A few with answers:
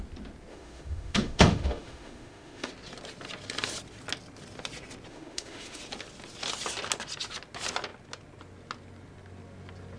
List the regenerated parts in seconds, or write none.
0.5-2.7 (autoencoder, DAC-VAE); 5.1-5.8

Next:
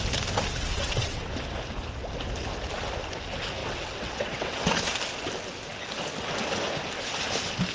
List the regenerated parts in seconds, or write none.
0.5-1.3 (vocoder, WaveNeXt); 3.6-4.9

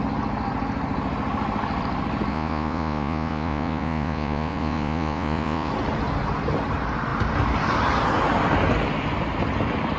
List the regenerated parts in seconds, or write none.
2.3-5.7 (vocoder, Vocos)

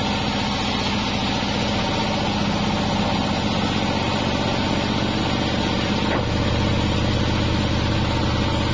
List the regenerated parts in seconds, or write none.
none

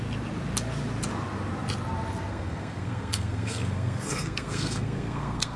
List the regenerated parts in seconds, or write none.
2.3-5.6 (codec, SNAC)

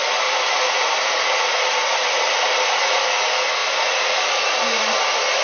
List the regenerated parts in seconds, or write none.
none

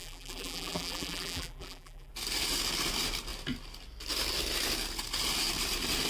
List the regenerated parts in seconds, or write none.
0.0-2.1 (vocoder, BigVGAN v2)

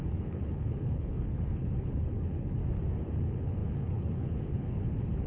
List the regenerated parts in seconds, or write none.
0.0-2.6 (codec, HILCodec); 3.2-5.3